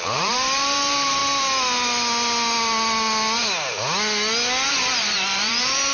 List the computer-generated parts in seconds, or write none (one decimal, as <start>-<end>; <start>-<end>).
0.0-1.2; 4.7-5.9